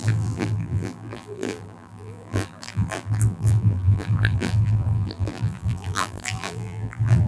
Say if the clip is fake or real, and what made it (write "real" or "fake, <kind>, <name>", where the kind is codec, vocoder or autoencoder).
fake, vocoder, BigVGAN v2